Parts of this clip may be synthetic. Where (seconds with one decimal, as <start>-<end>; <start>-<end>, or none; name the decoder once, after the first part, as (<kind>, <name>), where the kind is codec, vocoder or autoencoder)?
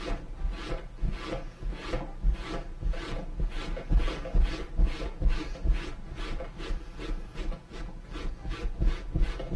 none